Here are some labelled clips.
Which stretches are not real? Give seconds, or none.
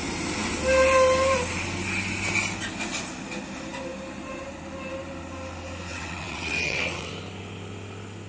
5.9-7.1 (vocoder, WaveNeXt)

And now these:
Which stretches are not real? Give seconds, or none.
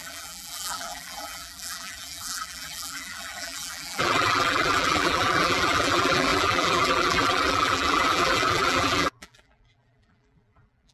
0.0-10.9 (vocoder, BigVGAN v2)